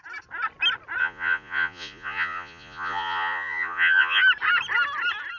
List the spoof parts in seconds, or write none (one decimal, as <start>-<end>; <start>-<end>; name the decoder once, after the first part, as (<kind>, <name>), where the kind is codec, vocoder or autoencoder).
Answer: 1.0-4.2 (vocoder, Vocos)